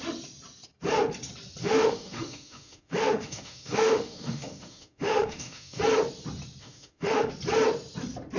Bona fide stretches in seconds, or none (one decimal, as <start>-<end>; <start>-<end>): 0.0-1.6; 5.8-6.6; 7.3-8.4